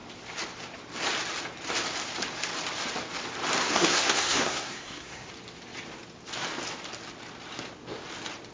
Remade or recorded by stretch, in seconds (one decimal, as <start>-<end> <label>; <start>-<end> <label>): 0.0-3.6 recorded; 3.6-5.3 remade; 5.3-8.5 recorded

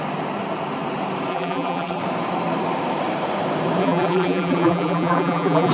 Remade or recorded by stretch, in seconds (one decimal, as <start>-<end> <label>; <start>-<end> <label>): 0.0-1.3 recorded; 1.3-2.0 remade; 2.0-3.8 recorded; 3.8-5.7 remade

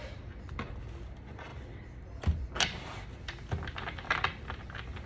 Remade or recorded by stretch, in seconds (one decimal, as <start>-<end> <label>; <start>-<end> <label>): 0.0-5.1 recorded

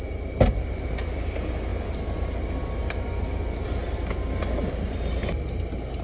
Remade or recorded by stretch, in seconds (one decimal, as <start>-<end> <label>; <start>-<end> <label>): 0.0-6.0 recorded

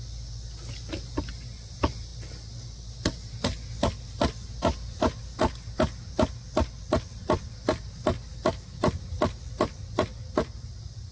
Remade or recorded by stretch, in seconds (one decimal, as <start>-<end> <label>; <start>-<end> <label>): 0.0-11.1 recorded

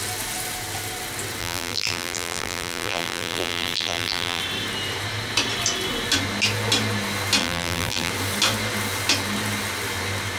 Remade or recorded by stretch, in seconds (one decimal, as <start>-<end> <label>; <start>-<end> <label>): 0.0-1.4 recorded; 1.4-4.4 remade; 4.4-7.4 recorded; 7.4-8.1 remade; 8.1-10.4 recorded